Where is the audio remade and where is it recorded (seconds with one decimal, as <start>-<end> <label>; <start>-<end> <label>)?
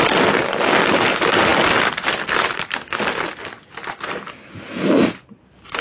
0.0-5.8 recorded